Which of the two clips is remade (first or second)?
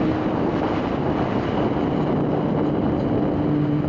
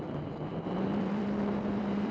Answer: second